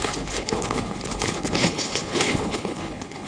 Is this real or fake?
fake